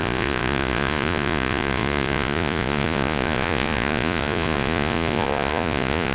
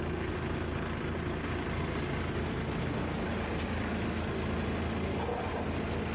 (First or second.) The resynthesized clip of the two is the first